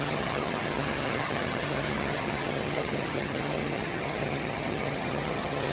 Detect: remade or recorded remade